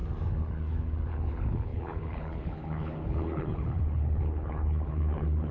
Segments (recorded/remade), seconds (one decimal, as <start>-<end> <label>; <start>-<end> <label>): 0.0-1.1 recorded; 1.1-5.5 remade